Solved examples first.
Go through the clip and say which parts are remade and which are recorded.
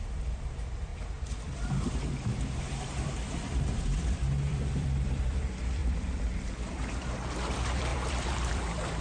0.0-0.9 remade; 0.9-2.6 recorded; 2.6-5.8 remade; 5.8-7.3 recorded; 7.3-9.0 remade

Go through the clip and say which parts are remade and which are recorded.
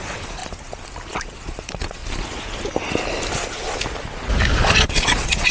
0.0-0.4 remade; 0.4-1.1 recorded; 1.1-2.0 remade; 2.0-4.6 recorded; 4.6-5.5 remade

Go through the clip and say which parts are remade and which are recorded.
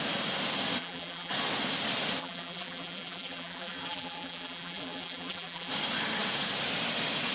0.0-0.8 recorded; 0.8-1.3 remade; 1.3-2.2 recorded; 2.2-5.7 remade; 5.7-7.3 recorded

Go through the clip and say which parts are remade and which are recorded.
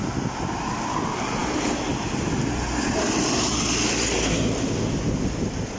0.0-5.8 recorded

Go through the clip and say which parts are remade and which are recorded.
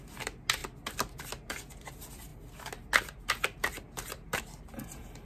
0.0-5.2 recorded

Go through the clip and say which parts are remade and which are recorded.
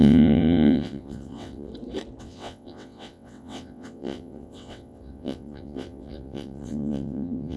0.0-1.7 remade; 1.7-2.2 recorded; 2.2-7.6 remade